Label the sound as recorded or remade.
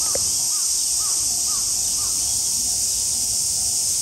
recorded